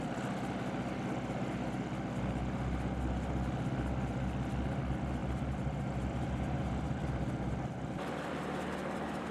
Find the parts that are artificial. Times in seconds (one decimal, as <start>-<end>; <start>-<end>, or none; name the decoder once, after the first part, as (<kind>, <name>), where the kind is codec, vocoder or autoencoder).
none